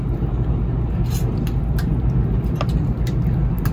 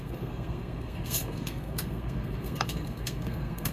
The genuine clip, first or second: first